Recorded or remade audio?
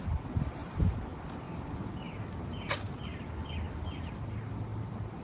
recorded